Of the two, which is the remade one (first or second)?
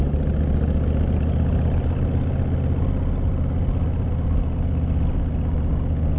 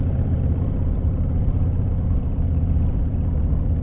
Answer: second